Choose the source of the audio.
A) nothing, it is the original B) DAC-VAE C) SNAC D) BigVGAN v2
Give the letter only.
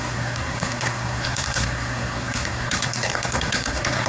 C